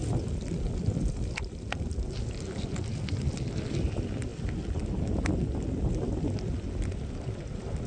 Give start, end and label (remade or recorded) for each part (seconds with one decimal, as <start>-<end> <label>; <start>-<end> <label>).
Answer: 0.0-7.9 recorded